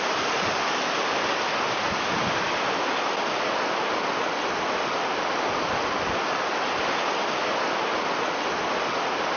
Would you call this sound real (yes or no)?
yes